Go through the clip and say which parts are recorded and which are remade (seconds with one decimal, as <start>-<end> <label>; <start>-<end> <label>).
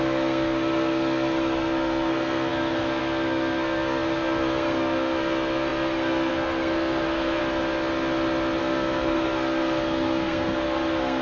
0.0-7.4 remade; 7.4-8.6 recorded; 8.6-11.2 remade